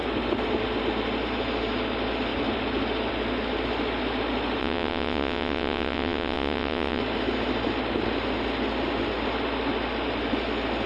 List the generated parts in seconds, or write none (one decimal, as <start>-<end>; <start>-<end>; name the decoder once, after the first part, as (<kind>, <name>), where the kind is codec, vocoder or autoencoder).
4.6-7.0 (vocoder, WaveNeXt)